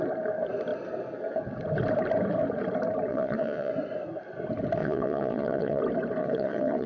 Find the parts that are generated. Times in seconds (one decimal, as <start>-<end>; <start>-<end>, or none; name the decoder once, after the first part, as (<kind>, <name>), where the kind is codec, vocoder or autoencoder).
3.1-3.7 (vocoder, WaveNeXt); 4.8-5.8; 6.2-6.9